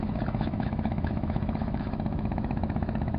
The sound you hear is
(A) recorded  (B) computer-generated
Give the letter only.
B